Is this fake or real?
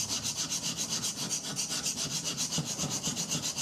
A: real